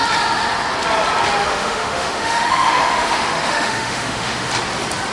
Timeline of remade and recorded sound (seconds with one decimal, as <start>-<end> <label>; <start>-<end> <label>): 0.0-1.4 recorded; 1.4-4.5 remade; 4.5-5.1 recorded